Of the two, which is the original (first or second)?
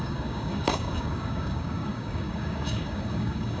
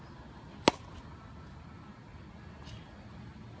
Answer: second